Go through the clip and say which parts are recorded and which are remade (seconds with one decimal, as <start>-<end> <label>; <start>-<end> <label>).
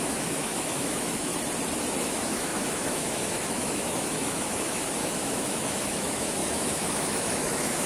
0.0-1.3 remade; 1.3-2.0 recorded; 2.0-7.9 remade